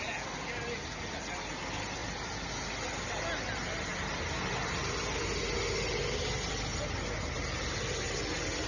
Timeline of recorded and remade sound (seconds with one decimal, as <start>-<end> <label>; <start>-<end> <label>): 0.0-8.7 recorded